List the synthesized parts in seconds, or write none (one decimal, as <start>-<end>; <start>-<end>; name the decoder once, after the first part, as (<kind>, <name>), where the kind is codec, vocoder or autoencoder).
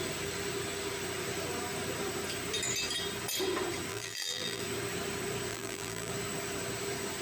3.9-4.6 (vocoder, BigVGAN v2); 5.5-6.1